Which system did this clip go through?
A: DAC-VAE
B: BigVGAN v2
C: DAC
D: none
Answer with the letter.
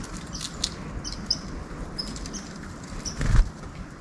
D